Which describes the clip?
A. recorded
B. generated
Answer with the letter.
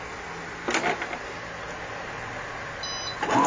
A